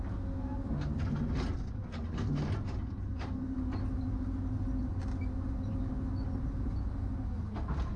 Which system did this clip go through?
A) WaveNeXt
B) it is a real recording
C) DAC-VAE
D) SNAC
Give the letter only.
B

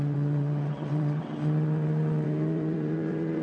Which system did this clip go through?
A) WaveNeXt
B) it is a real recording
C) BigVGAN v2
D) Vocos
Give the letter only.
A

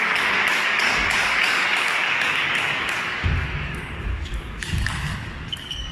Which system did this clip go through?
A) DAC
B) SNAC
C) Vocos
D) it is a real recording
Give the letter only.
A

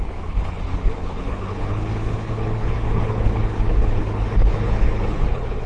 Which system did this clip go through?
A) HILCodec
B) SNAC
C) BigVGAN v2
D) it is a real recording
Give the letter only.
A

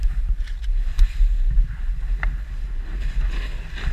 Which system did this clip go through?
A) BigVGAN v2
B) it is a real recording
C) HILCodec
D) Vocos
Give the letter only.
B